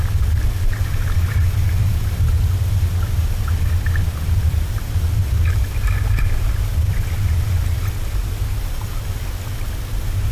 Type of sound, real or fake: real